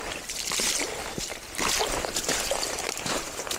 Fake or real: fake